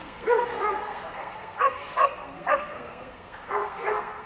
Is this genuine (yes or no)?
no